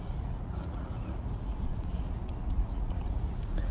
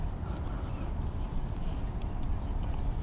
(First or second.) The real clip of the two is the second